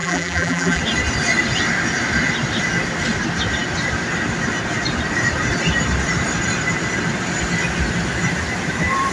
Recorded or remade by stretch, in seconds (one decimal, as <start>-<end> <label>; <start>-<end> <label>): 0.0-0.8 remade; 0.8-9.1 recorded